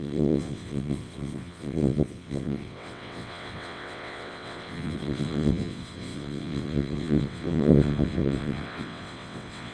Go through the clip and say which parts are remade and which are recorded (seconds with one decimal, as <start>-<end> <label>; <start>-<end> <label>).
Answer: 0.0-9.7 remade